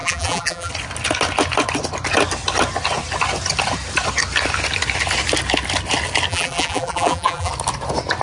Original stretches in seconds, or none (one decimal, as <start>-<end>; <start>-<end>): 0.7-6.3; 7.5-8.2